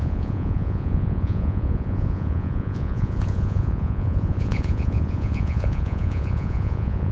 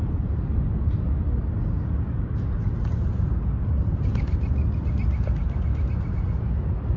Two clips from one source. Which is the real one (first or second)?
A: second